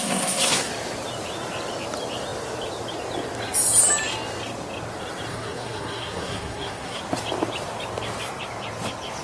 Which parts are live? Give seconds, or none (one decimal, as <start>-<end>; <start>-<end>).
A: 0.7-5.3; 7.0-9.2